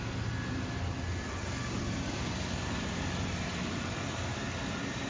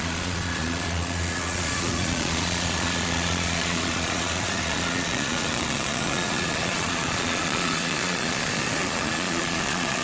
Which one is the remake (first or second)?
second